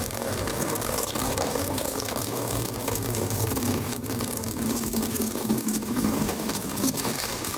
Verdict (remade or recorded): remade